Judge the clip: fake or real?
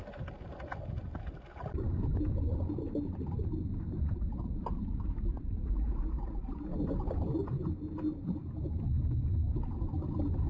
real